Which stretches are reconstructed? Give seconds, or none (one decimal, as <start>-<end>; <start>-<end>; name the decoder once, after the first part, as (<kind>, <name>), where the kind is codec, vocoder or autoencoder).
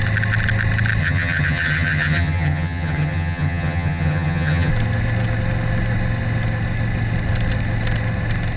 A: 1.0-4.7 (vocoder, HiFi-GAN)